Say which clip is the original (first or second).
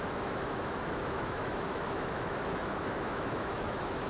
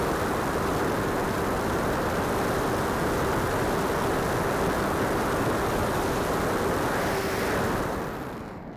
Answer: second